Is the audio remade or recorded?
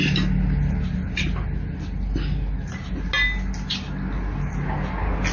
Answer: recorded